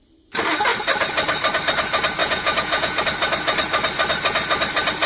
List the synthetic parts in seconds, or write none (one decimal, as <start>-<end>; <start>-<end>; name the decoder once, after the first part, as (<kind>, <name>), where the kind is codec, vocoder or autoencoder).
2.2-3.0 (vocoder, Vocos)